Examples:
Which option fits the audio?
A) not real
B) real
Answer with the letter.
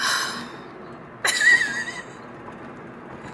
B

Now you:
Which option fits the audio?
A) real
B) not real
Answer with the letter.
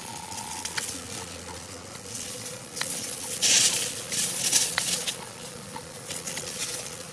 B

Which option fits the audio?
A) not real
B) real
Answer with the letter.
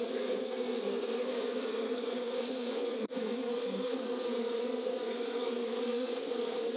A